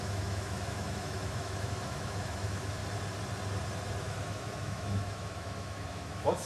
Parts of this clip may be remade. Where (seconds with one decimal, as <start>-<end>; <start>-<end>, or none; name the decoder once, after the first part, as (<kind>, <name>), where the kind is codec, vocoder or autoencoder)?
0.0-2.8 (autoencoder, DAC-VAE); 4.0-6.5